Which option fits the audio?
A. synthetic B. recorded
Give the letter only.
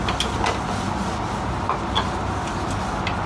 B